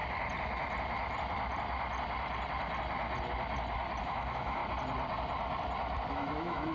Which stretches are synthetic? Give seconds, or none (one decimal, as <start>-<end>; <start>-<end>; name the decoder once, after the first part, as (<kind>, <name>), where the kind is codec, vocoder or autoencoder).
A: 4.0-4.6 (autoencoder, DAC-VAE); 6.1-6.7